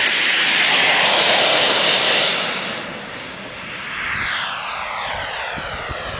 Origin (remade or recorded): recorded